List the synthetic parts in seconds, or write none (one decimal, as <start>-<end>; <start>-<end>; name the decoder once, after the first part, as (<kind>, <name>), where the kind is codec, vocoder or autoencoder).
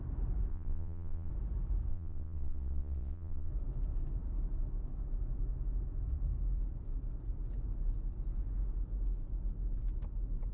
0.5-1.3 (vocoder, Vocos); 1.9-3.5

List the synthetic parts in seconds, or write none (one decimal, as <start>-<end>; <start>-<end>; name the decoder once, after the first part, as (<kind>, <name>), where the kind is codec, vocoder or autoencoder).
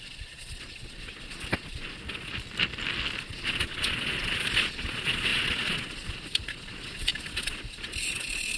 0.0-2.3 (vocoder, Vocos); 3.2-8.6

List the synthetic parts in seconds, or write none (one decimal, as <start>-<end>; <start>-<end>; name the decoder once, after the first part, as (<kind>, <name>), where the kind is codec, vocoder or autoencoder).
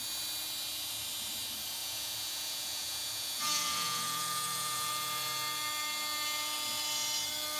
1.8-4.9 (vocoder, Vocos)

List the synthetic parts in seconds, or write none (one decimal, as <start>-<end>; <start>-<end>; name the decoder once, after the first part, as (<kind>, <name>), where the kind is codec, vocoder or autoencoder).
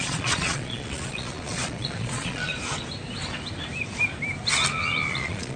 0.0-2.5 (vocoder, Vocos); 5.1-5.6